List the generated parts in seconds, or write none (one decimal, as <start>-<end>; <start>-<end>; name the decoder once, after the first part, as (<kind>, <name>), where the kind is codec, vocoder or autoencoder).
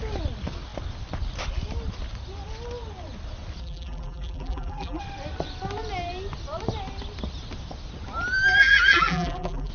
3.6-5.0 (vocoder, BigVGAN v2); 8.6-9.7